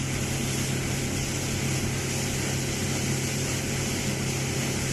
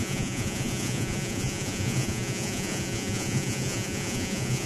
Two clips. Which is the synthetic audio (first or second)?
second